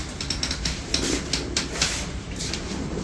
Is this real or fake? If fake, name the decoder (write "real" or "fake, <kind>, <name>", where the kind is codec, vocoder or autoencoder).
fake, vocoder, BigVGAN v2